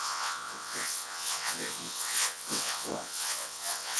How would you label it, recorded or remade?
remade